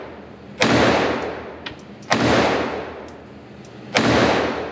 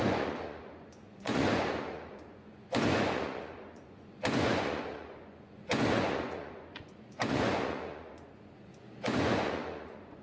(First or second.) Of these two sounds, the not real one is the second